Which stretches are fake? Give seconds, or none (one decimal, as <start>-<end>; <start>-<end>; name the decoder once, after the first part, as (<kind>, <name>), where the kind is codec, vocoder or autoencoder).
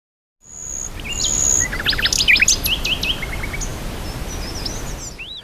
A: none